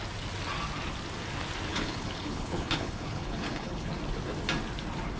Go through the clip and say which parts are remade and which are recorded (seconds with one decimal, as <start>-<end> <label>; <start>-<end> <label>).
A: 0.0-1.7 recorded; 1.7-3.9 remade; 3.9-5.2 recorded